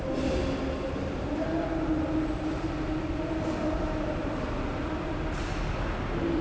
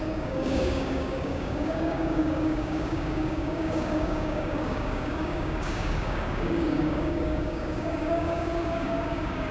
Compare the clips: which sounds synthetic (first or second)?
second